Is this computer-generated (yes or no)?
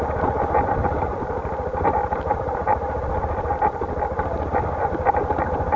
yes